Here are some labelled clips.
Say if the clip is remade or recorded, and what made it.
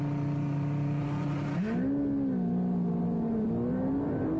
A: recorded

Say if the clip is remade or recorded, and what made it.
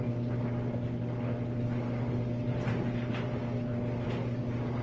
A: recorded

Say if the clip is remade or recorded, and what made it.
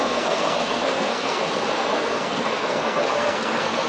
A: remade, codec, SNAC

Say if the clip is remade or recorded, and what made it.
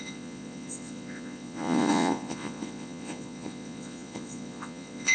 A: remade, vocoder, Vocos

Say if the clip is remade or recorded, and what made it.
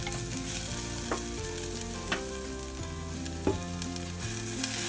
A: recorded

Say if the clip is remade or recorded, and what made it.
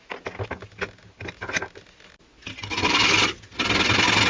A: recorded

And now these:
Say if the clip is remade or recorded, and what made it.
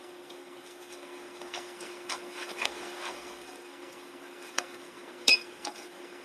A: remade, codec, SNAC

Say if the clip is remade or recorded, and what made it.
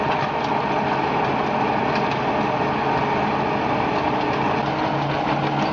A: recorded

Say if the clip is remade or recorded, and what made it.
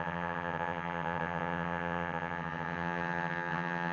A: remade, vocoder, HiFi-GAN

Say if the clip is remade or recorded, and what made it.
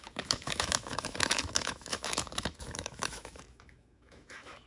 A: remade, autoencoder, DAC-VAE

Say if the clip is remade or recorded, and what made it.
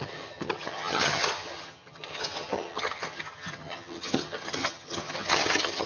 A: remade, vocoder, HiFi-GAN